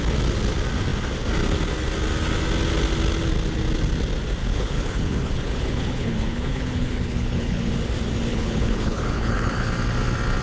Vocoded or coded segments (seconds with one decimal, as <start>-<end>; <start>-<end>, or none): 4.4-7.7; 8.3-9.7